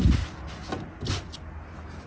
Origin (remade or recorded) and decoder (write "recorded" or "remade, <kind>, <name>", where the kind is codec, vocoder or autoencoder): recorded